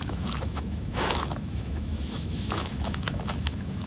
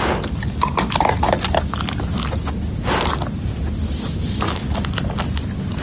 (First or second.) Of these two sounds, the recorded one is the second